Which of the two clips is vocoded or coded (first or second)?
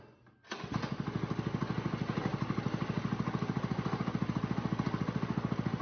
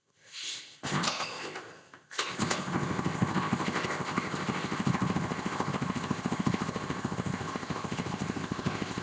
second